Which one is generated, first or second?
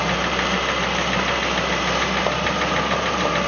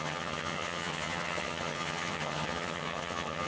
second